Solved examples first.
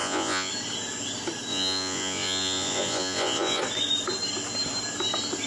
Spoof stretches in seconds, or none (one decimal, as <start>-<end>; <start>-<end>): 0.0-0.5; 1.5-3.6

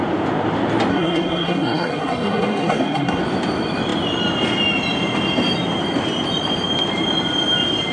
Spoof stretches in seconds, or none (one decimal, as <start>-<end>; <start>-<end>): 0.9-3.2

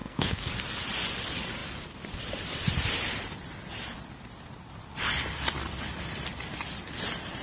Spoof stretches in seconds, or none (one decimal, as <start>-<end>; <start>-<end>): 0.0-0.5

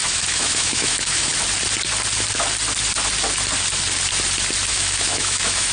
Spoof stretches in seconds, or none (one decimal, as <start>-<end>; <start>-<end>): 0.0-1.3; 4.7-5.7

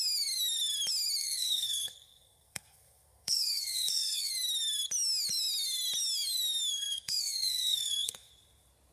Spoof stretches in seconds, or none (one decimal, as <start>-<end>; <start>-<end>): 1.2-4.3; 6.7-8.3

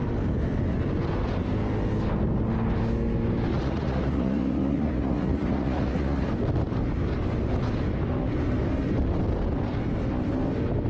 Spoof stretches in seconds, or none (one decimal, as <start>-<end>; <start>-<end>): 3.5-6.3